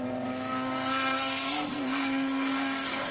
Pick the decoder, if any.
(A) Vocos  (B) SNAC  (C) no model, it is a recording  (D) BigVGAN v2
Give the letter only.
B